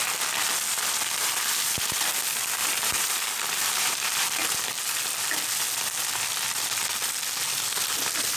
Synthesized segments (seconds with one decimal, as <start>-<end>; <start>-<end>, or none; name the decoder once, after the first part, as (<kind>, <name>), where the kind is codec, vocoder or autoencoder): 2.6-4.6 (vocoder, BigVGAN v2)